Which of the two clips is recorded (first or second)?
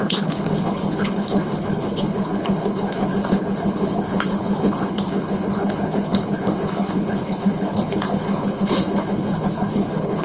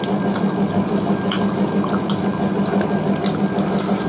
second